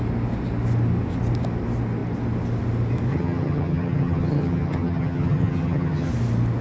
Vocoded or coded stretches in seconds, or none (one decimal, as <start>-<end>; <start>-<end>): 3.1-6.1